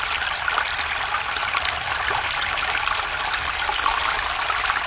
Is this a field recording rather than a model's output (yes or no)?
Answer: yes